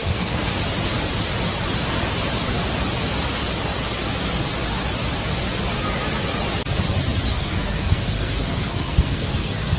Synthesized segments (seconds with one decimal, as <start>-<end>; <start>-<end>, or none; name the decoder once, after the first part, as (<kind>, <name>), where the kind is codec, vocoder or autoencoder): 0.0-0.6 (codec, SNAC); 7.3-9.8